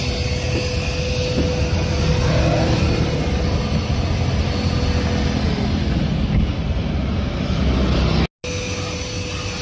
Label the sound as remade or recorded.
recorded